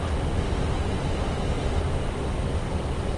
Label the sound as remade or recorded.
recorded